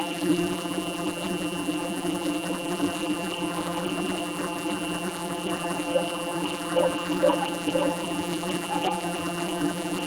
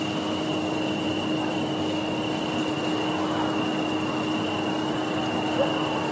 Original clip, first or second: second